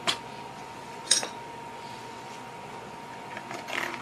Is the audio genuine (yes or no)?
no